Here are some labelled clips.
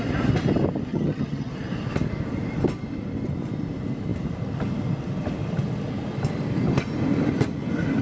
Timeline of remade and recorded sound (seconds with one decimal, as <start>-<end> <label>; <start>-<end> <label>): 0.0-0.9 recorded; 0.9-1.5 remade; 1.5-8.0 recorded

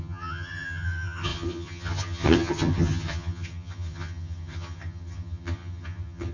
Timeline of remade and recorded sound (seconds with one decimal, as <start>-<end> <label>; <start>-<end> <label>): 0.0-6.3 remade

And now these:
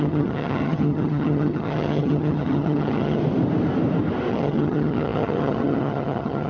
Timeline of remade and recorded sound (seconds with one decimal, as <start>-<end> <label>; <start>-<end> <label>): 0.0-3.2 remade; 3.2-4.3 recorded; 4.3-6.5 remade

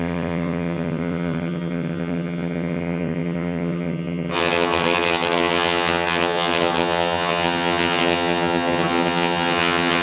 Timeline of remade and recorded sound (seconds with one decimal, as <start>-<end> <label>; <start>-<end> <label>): 0.0-10.0 remade

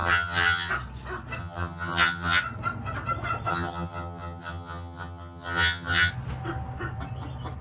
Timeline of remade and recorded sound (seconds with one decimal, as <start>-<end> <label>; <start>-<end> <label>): 0.0-0.7 remade; 0.7-1.4 recorded; 1.4-2.4 remade; 2.4-3.5 recorded; 3.5-6.1 remade; 6.1-7.6 recorded